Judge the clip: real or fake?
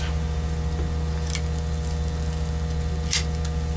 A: real